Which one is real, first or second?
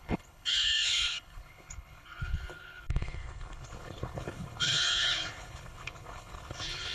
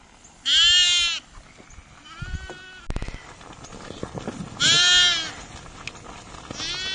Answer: second